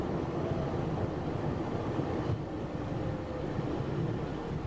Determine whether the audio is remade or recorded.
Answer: recorded